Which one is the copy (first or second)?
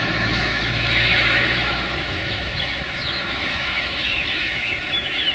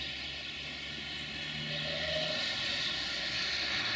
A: first